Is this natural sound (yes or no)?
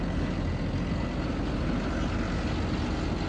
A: yes